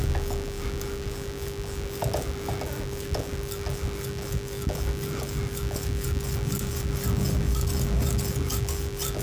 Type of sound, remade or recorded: recorded